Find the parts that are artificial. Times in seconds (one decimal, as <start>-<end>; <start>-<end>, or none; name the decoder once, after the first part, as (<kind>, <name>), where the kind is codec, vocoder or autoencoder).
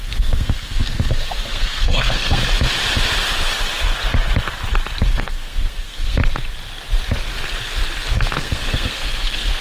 0.0-2.4 (codec, SNAC); 5.1-6.2; 8.4-9.6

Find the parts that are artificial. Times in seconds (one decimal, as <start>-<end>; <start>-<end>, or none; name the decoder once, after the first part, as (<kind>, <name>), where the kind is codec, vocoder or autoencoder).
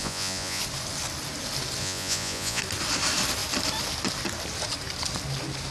0.0-0.6 (vocoder, Vocos); 1.8-2.6